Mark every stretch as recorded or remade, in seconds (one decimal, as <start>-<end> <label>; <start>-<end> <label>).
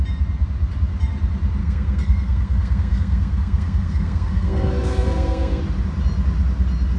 0.0-1.6 recorded; 1.6-5.6 remade; 5.6-7.0 recorded